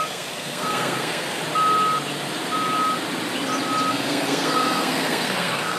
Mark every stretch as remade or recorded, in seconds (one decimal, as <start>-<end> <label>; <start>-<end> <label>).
0.0-1.4 remade; 1.4-3.9 recorded; 3.9-5.8 remade

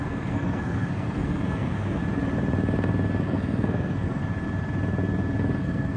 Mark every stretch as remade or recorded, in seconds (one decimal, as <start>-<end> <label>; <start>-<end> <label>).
0.0-2.0 remade; 2.0-3.2 recorded; 3.2-4.2 remade; 4.2-5.6 recorded; 5.6-6.0 remade

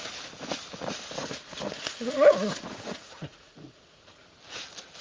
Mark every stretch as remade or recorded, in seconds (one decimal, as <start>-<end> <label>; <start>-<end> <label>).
0.0-1.2 recorded; 1.2-4.2 remade; 4.2-5.0 recorded

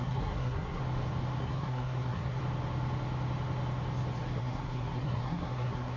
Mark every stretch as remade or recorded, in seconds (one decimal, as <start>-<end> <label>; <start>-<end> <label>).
0.0-0.8 remade; 0.8-1.4 recorded; 1.4-2.4 remade; 2.4-4.4 recorded; 4.4-6.0 remade

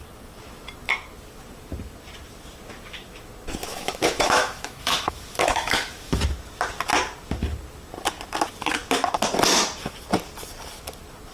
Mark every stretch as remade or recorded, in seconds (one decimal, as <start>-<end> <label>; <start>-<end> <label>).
0.0-3.7 recorded; 3.7-6.2 remade; 6.2-11.3 recorded

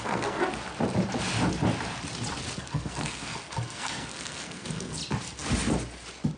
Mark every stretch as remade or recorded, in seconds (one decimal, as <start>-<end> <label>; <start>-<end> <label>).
0.0-0.4 remade; 0.4-2.6 recorded; 2.6-5.0 remade; 5.0-6.4 recorded

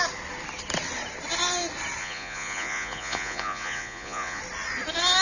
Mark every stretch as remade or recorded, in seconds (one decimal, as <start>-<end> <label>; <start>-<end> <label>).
0.0-2.0 recorded; 2.0-4.4 remade; 4.4-5.2 recorded